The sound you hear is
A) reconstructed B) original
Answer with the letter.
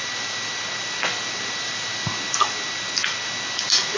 B